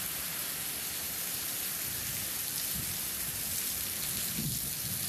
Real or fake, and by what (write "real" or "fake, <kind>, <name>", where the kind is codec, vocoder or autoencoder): real